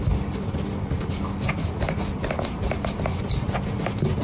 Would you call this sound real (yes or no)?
yes